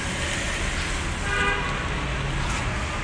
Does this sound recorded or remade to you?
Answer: recorded